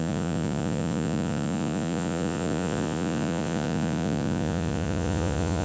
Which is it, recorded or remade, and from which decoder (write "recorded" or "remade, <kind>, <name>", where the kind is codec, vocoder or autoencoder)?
remade, vocoder, Vocos